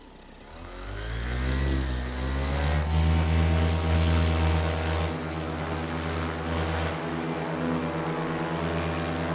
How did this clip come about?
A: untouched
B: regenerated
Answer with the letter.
A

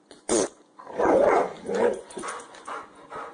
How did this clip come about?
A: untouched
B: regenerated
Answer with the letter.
B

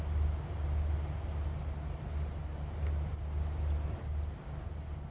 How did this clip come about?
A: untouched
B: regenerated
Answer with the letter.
A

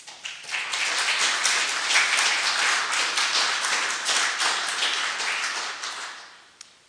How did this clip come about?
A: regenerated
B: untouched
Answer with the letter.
B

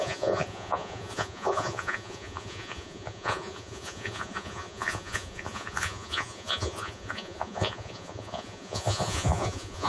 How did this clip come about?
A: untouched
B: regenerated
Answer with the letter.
B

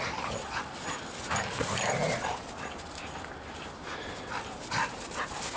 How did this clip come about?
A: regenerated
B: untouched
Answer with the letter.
B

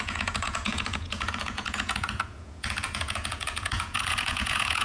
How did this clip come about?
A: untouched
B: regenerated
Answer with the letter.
B